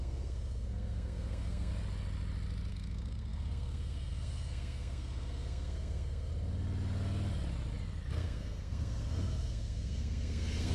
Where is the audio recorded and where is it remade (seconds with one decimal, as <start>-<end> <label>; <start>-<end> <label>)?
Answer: 0.0-1.7 remade; 1.7-2.7 recorded; 2.7-6.3 remade; 6.3-8.1 recorded; 8.1-10.7 remade